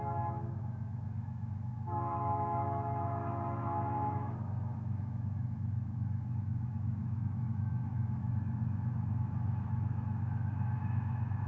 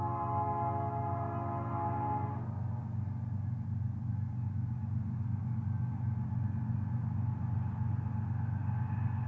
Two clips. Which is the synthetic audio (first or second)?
first